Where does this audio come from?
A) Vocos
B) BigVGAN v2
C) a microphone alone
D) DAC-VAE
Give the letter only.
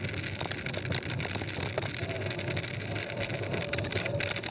C